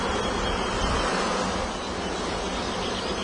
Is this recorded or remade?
recorded